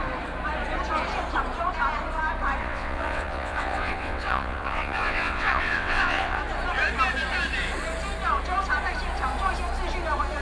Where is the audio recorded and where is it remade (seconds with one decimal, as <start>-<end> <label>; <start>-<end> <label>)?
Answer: 0.0-2.6 recorded; 2.6-6.4 remade; 6.4-10.4 recorded